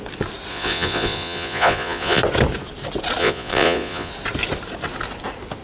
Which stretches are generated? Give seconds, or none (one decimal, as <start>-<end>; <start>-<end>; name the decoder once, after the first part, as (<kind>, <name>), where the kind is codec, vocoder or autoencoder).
0.5-2.2 (vocoder, Vocos); 3.2-4.1

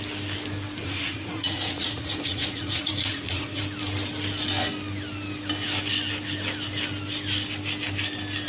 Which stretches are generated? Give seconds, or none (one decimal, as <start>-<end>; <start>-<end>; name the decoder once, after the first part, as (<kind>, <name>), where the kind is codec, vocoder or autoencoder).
0.8-3.6 (vocoder, Vocos)